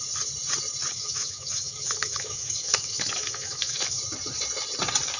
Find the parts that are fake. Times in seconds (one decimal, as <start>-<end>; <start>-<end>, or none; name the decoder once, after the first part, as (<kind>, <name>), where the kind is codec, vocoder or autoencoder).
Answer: 0.9-4.0 (autoencoder, DAC-VAE)